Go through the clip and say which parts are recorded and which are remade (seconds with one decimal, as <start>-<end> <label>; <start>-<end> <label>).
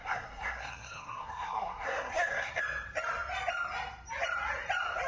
0.0-2.6 remade; 2.6-5.1 recorded